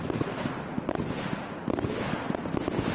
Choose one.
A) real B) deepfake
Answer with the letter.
A